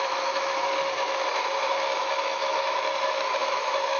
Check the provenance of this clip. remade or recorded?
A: remade